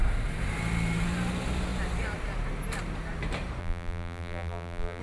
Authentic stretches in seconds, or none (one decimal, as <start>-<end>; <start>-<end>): 0.0-3.6